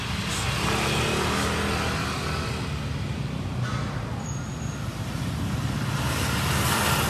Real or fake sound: real